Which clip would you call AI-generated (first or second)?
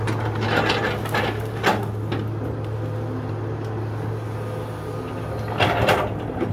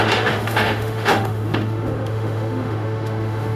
second